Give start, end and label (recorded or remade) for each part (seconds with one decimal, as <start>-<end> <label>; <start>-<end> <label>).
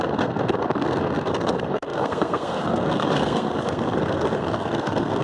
0.0-5.2 remade